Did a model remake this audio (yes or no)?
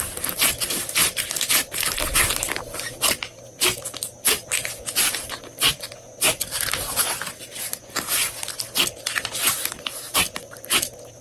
no